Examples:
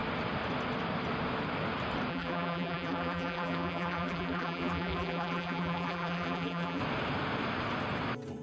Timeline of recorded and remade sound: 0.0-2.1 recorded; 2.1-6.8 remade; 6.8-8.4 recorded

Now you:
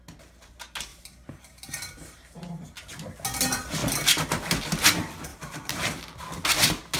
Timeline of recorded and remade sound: 0.0-0.9 recorded; 0.9-2.4 remade; 2.4-5.3 recorded; 5.3-6.0 remade; 6.0-7.0 recorded